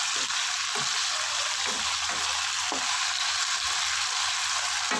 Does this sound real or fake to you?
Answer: real